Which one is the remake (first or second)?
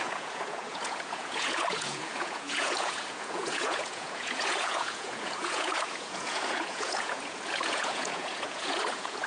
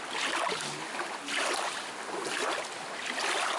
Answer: first